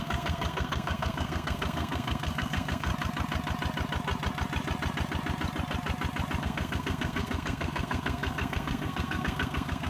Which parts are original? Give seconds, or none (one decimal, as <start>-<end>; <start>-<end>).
2.9-6.4